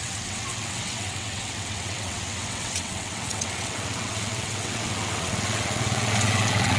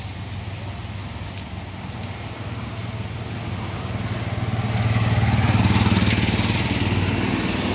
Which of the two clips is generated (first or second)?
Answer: first